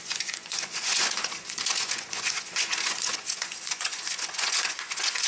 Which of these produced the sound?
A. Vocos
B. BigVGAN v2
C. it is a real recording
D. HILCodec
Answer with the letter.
A